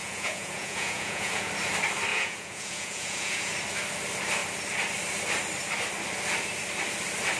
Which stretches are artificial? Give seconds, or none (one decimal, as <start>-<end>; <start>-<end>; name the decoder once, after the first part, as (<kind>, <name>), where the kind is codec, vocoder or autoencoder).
0.0-1.5 (vocoder, Vocos); 2.1-3.5